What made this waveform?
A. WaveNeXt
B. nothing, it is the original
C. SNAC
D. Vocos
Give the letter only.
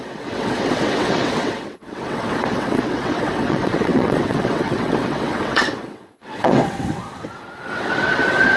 A